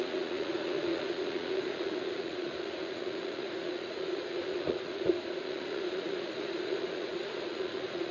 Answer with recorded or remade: remade